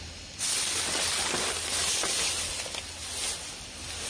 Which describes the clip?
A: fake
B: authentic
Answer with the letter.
B